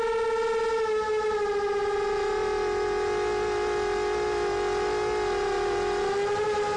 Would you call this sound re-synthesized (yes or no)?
no